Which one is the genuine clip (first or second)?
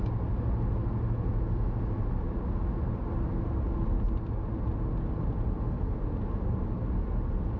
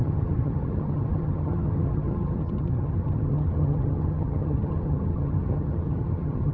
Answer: first